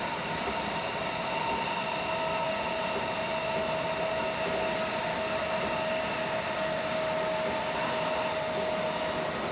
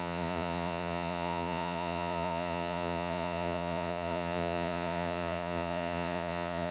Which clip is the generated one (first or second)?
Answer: second